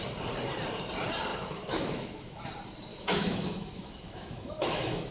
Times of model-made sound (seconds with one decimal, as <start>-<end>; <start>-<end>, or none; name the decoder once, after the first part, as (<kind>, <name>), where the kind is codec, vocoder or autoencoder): 1.3-2.4 (autoencoder, DAC-VAE); 2.9-5.1